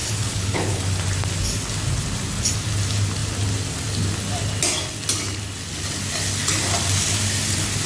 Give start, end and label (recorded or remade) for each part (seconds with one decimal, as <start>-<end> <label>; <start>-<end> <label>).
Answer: 0.0-0.8 remade; 0.8-7.9 recorded